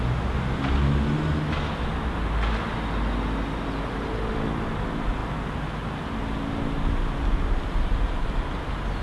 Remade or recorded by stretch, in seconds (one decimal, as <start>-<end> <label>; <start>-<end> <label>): 0.0-9.0 recorded